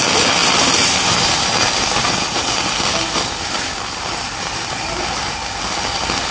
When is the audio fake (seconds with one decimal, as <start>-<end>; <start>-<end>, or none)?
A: none